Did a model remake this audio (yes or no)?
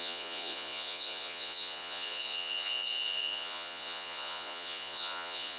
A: yes